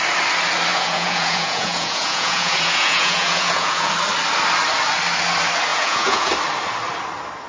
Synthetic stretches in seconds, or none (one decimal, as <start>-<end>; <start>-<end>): 0.7-3.9; 5.7-6.3